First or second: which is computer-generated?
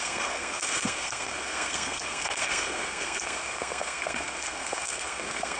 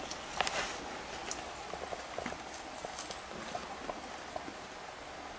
first